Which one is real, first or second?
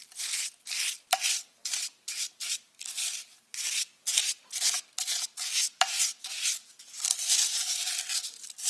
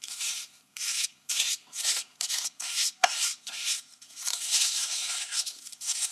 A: first